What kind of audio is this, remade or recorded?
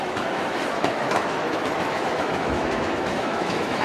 remade